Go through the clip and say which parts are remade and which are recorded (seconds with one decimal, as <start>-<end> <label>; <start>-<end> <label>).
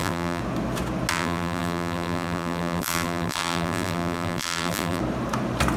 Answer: 0.0-0.4 remade; 0.4-1.1 recorded; 1.1-5.0 remade; 5.0-5.8 recorded